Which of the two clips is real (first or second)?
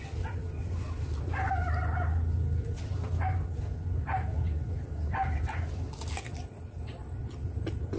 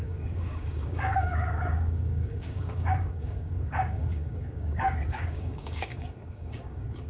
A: first